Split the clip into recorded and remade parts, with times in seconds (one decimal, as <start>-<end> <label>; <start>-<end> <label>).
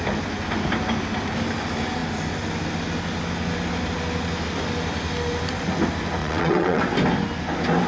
0.0-6.2 recorded; 6.2-6.8 remade; 6.8-7.9 recorded